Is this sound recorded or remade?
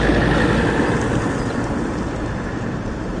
recorded